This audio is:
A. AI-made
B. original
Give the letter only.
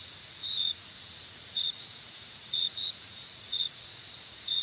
A